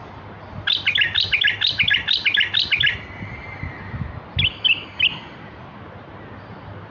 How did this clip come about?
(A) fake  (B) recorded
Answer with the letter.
B